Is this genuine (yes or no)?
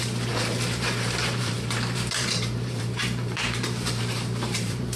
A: no